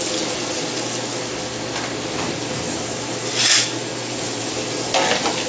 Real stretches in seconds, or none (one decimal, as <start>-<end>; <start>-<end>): 0.0-3.9; 4.7-5.5